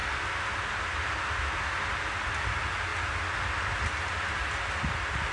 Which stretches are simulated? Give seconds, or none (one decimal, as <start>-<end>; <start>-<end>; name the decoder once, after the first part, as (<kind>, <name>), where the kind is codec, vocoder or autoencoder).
none